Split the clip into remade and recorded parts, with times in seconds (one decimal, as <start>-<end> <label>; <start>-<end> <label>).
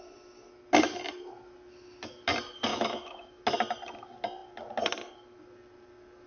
0.0-2.7 recorded; 2.7-3.4 remade; 3.4-6.3 recorded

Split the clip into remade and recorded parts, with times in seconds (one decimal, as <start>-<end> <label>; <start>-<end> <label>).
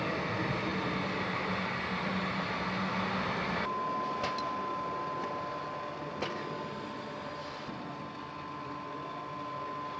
0.0-10.0 recorded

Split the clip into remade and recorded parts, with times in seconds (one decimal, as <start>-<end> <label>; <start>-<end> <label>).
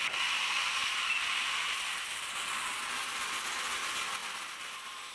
0.0-0.8 recorded; 0.8-2.8 remade; 2.8-5.1 recorded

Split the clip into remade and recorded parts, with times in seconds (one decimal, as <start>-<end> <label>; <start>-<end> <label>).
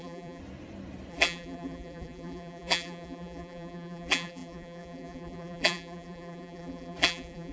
0.0-0.4 remade; 0.4-1.1 recorded; 1.1-7.5 remade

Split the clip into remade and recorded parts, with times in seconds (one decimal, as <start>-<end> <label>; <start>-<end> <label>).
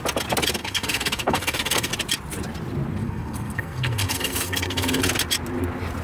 0.0-0.6 recorded; 0.6-1.9 remade; 1.9-3.0 recorded; 3.0-5.0 remade; 5.0-6.0 recorded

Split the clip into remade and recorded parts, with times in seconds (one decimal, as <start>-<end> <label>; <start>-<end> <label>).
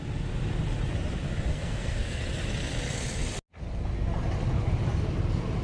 0.0-1.5 recorded; 1.5-2.2 remade; 2.2-5.6 recorded